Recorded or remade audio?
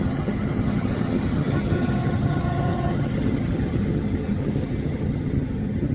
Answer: remade